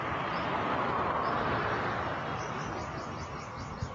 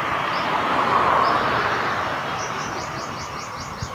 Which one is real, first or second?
first